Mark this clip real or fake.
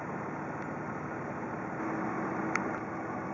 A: real